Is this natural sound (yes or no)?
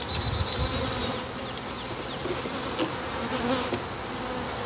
yes